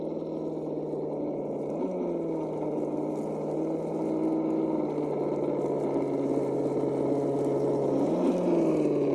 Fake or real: real